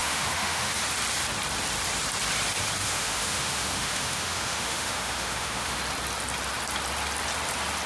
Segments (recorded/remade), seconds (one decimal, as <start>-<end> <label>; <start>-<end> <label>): 0.0-0.8 remade; 0.8-2.8 recorded; 2.8-5.8 remade; 5.8-7.9 recorded